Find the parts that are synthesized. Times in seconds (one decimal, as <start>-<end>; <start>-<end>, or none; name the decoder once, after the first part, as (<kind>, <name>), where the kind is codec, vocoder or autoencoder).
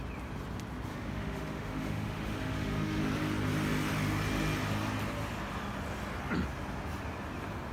0.9-3.0 (autoencoder, DAC-VAE)